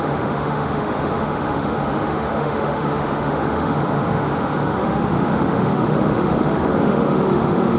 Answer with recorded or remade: remade